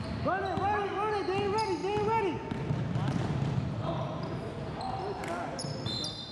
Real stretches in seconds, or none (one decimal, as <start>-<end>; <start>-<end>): 0.0-6.3